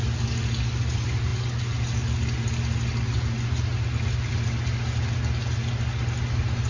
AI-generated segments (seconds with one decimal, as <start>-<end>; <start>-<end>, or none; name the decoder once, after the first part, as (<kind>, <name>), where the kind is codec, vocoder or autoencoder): none